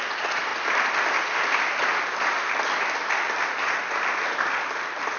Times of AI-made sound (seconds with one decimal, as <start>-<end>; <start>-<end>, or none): none